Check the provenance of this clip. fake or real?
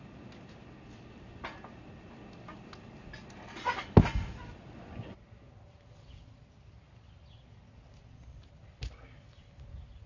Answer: real